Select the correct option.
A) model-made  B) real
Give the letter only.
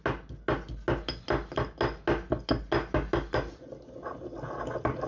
B